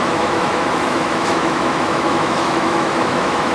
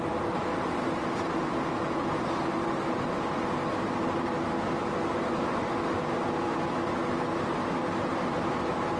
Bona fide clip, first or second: second